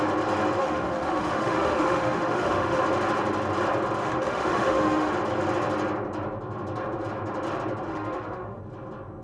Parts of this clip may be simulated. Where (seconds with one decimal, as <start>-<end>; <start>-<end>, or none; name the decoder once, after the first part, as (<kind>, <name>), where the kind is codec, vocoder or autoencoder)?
0.6-2.8 (autoencoder, DAC-VAE); 4.0-5.1; 7.9-8.6